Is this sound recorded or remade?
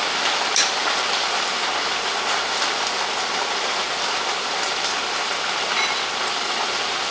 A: remade